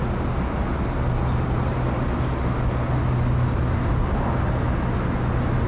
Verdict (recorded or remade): recorded